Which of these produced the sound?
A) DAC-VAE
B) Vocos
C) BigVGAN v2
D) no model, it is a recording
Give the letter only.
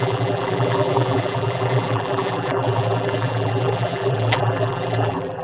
C